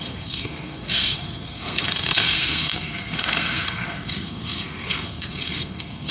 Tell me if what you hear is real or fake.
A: fake